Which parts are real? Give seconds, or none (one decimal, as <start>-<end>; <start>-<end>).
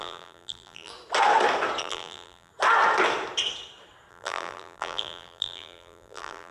0.9-1.8; 2.5-4.1